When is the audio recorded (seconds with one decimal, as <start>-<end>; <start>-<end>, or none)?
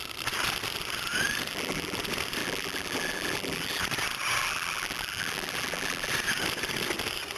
0.0-1.5; 2.0-2.4; 3.8-4.4; 6.1-7.4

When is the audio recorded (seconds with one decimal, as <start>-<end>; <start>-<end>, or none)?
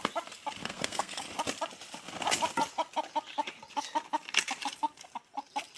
0.0-0.6; 1.2-5.8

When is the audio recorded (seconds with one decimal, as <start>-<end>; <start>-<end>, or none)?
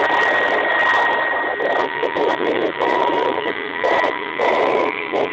0.0-1.8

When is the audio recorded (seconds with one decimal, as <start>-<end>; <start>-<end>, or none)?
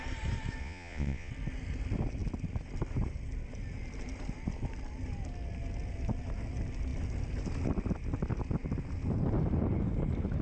0.0-0.6; 1.3-10.4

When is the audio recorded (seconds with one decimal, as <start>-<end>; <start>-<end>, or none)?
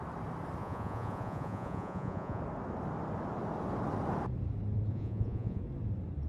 0.0-0.6; 2.4-4.9; 5.6-6.3